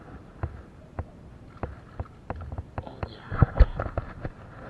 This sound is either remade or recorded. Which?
remade